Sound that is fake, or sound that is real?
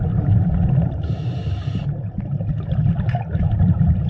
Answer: real